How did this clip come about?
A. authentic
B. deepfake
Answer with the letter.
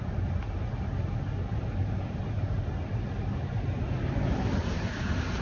A